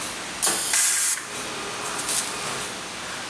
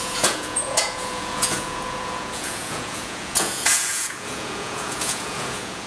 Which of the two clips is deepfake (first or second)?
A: second